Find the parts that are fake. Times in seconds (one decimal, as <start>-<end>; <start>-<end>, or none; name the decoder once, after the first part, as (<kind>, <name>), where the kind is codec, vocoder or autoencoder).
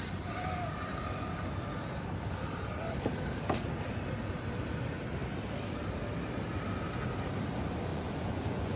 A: 7.9-8.8 (vocoder, Vocos)